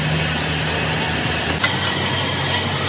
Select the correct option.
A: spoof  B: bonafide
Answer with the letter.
B